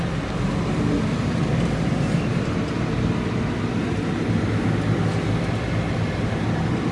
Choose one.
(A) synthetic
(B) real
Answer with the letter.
B